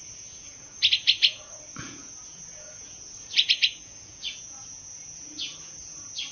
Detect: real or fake fake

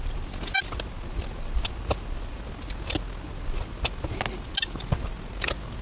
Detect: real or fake real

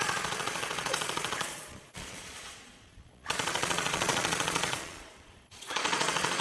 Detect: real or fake fake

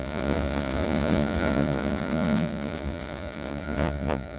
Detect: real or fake fake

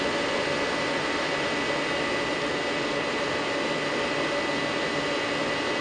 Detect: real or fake real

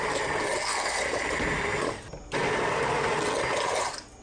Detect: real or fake real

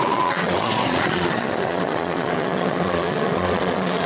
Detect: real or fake fake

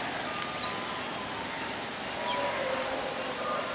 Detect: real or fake real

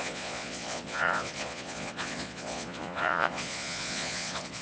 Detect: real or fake fake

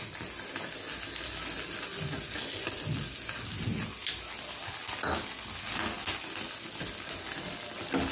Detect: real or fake real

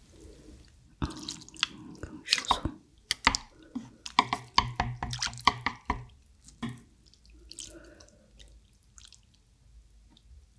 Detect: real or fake real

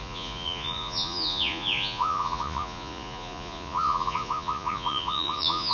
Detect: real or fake fake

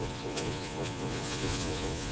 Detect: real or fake fake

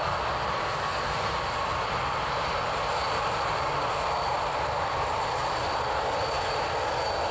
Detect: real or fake real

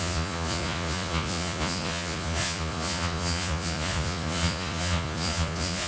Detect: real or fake fake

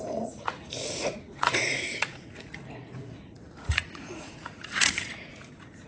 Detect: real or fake fake